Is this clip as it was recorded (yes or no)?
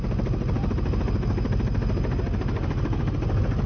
yes